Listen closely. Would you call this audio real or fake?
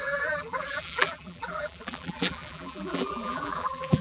fake